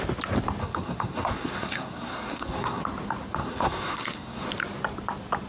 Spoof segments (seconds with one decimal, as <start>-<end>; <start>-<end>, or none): 0.6-2.8; 3.4-4.5